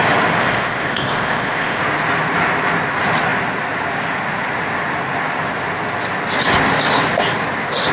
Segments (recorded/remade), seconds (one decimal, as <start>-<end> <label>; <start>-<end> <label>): 0.0-0.4 recorded; 0.4-1.8 remade; 1.8-7.9 recorded